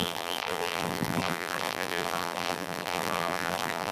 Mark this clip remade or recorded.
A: remade